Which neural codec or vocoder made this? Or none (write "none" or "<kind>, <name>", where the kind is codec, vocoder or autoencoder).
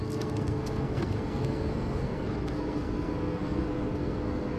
codec, SNAC